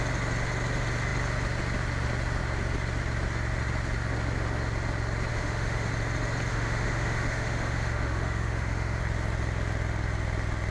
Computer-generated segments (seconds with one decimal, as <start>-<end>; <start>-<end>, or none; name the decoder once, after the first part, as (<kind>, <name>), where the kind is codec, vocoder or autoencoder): 5.3-5.9 (autoencoder, DAC-VAE); 6.5-9.0